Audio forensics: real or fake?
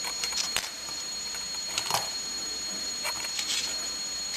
fake